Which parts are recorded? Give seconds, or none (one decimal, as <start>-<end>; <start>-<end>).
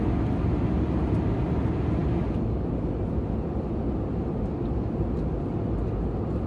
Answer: 0.0-6.5